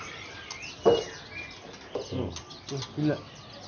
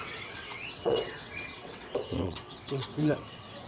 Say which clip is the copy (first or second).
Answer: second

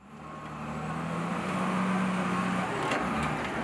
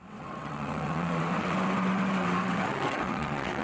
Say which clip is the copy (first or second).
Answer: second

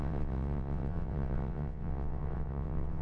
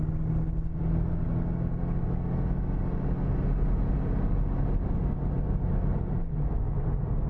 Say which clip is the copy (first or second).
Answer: first